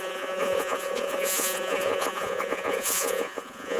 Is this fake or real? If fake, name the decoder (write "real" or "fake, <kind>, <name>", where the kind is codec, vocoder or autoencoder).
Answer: fake, vocoder, Vocos